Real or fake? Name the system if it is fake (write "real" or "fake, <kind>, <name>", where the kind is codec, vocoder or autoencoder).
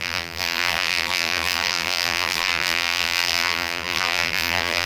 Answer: fake, vocoder, BigVGAN v2